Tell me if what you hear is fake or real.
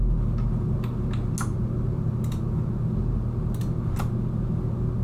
real